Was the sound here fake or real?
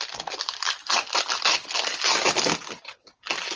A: real